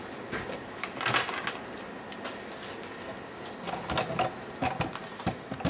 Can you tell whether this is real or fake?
real